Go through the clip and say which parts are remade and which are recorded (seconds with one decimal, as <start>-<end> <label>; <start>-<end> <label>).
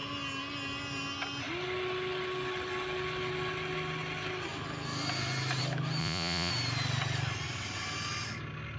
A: 0.0-6.0 recorded; 6.0-6.5 remade; 6.5-8.8 recorded